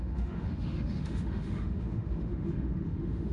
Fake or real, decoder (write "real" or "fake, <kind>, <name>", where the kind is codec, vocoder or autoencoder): fake, autoencoder, DAC-VAE